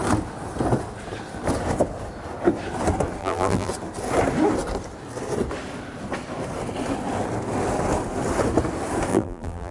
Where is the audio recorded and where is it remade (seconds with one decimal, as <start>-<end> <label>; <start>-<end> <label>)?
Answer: 0.0-3.2 recorded; 3.2-3.7 remade; 3.7-9.1 recorded; 9.1-9.7 remade